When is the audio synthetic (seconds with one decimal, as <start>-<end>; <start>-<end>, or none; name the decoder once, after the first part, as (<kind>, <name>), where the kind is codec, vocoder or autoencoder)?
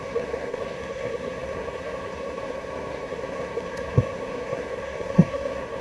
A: 0.0-5.8 (codec, SNAC)